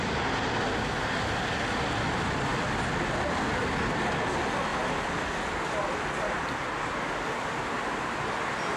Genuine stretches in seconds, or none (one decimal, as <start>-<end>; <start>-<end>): 0.0-8.8